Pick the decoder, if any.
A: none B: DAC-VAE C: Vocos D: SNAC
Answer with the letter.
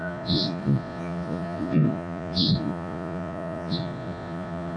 C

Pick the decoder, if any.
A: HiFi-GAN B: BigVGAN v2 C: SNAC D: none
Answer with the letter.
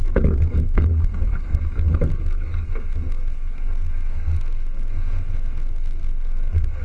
C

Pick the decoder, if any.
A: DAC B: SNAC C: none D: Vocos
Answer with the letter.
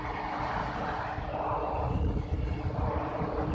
C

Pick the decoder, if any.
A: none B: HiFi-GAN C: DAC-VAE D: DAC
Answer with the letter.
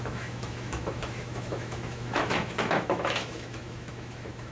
C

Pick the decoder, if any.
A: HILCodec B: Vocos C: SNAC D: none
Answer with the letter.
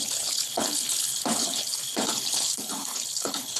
A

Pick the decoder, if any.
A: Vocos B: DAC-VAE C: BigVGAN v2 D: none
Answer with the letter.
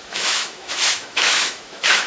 B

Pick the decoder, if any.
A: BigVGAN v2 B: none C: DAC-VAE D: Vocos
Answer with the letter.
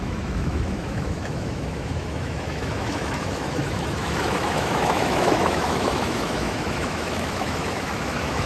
C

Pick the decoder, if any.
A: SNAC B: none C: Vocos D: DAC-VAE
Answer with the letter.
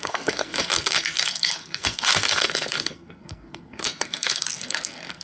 A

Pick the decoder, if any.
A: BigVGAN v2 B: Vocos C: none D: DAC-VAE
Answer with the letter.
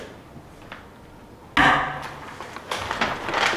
C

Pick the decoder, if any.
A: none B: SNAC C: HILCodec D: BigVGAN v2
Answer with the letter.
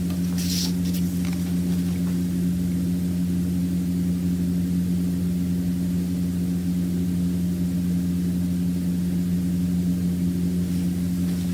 A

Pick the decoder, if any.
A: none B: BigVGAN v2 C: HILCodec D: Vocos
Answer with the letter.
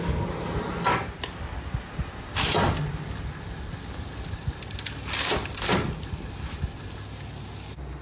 A